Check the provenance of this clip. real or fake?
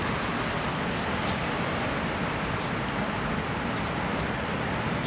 real